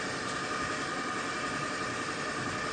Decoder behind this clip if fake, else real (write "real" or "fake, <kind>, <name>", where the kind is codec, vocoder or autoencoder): real